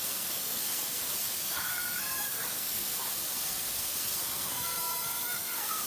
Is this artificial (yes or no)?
yes